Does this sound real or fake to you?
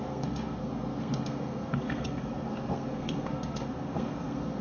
fake